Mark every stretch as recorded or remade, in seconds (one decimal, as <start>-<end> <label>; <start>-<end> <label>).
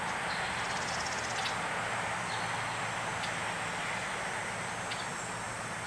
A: 0.0-5.9 recorded